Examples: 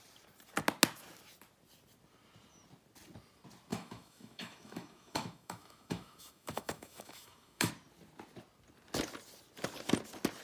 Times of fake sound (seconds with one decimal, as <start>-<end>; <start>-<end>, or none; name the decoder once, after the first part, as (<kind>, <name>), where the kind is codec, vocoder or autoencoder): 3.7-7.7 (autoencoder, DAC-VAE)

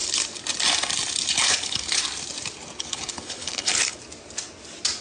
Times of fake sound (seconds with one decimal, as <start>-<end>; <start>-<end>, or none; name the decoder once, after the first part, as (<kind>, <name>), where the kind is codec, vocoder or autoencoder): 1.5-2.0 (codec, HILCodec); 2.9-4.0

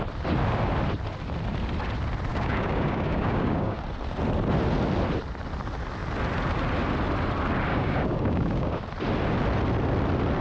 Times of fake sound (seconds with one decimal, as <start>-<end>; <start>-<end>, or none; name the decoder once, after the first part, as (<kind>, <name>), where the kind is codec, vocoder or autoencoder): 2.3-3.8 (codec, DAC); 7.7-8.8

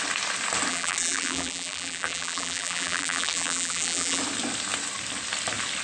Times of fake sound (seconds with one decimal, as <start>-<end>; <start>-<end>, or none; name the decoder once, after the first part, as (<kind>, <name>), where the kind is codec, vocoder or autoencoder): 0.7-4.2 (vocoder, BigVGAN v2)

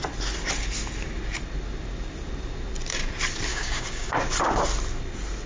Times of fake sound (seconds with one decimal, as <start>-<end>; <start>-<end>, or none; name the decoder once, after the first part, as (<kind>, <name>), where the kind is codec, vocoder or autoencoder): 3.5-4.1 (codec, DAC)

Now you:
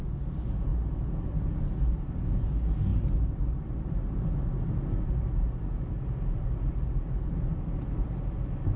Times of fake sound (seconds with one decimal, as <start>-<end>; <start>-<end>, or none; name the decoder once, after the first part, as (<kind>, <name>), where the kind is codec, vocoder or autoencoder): none

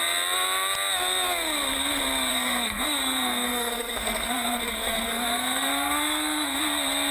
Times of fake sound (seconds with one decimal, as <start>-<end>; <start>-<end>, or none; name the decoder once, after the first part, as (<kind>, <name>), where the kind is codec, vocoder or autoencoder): 2.3-6.6 (codec, SNAC)

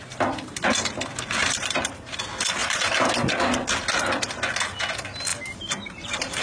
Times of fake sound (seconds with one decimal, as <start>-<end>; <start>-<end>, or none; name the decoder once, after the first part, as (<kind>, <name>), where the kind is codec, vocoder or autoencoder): 1.4-2.2 (vocoder, BigVGAN v2); 2.6-3.1; 5.3-6.4